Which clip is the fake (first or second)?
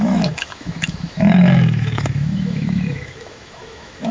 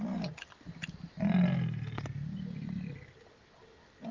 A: first